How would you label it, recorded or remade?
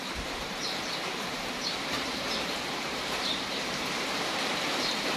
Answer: remade